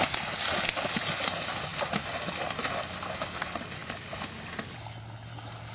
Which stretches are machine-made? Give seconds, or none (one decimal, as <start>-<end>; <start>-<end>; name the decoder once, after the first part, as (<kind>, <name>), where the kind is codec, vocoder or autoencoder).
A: none